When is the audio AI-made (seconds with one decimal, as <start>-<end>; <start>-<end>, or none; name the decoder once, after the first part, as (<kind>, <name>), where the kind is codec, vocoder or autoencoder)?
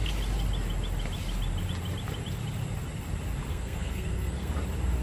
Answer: 3.5-4.5 (codec, SNAC)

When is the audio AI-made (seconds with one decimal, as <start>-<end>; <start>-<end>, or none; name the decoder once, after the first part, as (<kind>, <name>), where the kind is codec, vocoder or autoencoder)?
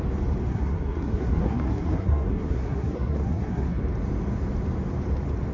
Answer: 0.5-3.8 (codec, SNAC)